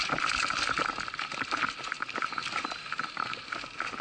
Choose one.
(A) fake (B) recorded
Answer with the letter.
B